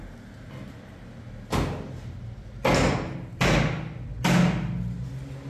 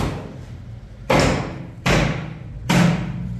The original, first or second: first